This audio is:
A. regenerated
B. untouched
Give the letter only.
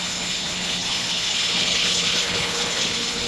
A